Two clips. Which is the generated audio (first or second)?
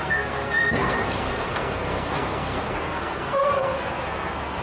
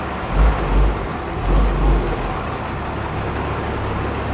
first